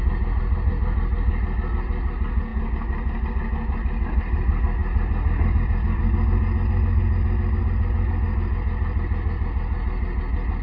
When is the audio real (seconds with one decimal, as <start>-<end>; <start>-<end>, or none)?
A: 0.0-10.6